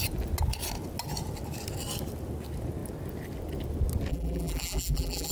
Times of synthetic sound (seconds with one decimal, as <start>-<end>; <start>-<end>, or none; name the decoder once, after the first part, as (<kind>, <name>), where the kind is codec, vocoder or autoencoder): 4.1-5.3 (vocoder, BigVGAN v2)